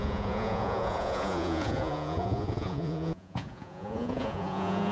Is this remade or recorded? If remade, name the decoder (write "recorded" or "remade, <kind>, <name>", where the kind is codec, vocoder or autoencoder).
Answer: remade, vocoder, Vocos